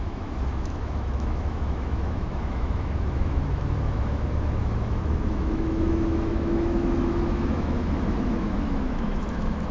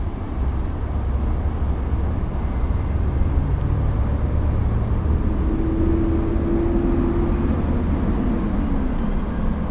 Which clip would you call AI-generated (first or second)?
first